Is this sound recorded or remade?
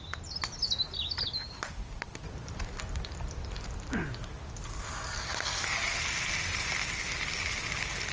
recorded